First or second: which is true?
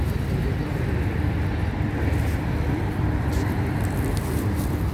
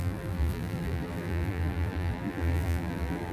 first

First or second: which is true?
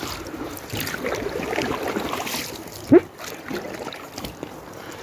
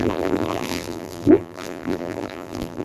first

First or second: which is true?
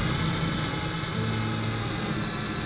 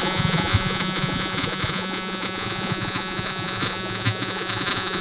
first